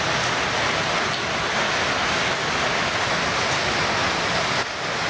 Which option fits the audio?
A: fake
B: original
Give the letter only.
B